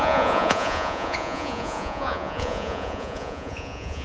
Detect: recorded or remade remade